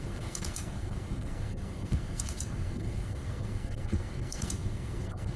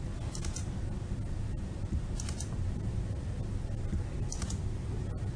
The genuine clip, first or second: second